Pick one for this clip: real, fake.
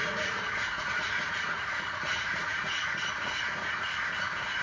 fake